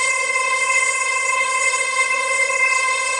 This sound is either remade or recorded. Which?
remade